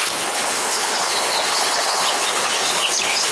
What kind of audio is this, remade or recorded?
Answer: remade